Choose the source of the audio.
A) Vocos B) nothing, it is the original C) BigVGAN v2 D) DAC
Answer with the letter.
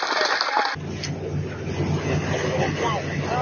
B